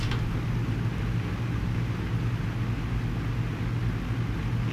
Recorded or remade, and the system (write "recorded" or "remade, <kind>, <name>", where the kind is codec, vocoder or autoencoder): recorded